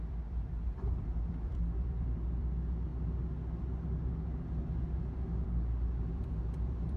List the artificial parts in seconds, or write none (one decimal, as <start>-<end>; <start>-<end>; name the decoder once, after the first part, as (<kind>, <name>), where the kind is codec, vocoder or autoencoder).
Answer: 0.0-2.9 (vocoder, BigVGAN v2); 5.2-7.0